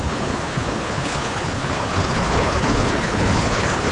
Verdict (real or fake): fake